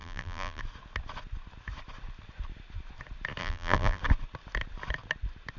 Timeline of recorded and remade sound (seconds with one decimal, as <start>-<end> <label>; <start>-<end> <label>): 0.0-0.6 remade; 0.6-3.4 recorded; 3.4-4.0 remade; 4.0-5.6 recorded